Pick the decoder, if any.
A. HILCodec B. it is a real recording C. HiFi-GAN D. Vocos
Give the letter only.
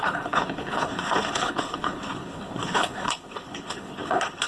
A